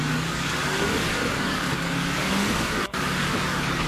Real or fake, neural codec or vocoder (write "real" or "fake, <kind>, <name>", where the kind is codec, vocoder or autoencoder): fake, codec, DAC